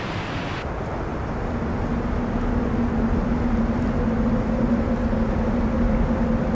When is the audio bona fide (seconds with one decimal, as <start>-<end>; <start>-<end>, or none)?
0.0-6.5